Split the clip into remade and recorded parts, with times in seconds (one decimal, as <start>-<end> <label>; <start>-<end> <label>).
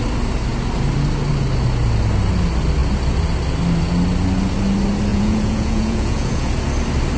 0.0-5.1 recorded; 5.1-6.5 remade; 6.5-7.2 recorded